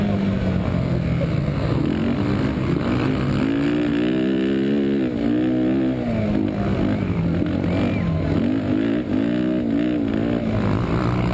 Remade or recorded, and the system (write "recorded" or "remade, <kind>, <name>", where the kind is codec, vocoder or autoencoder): recorded